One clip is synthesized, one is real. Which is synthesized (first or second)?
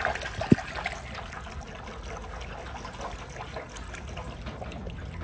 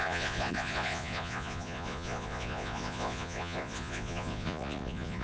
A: second